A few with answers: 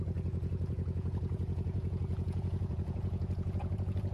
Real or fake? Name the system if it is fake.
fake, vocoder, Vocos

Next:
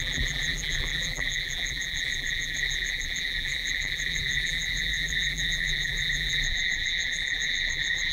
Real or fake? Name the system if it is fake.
fake, vocoder, BigVGAN v2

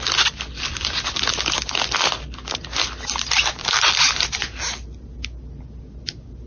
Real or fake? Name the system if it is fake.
real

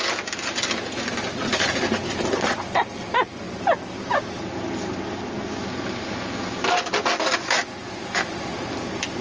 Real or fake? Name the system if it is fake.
real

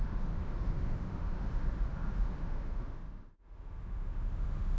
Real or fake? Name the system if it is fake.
fake, autoencoder, DAC-VAE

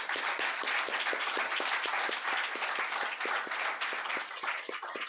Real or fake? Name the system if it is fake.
real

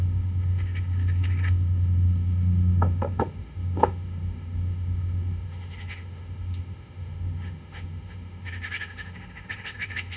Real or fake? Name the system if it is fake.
fake, autoencoder, DAC-VAE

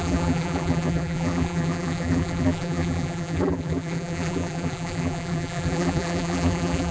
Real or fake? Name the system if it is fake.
fake, vocoder, BigVGAN v2